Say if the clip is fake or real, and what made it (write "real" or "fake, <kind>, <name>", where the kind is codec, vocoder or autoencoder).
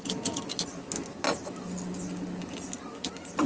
real